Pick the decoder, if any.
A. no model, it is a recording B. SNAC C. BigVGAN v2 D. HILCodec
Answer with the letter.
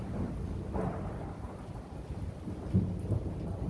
A